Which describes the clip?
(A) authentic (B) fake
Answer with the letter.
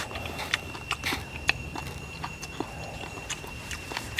A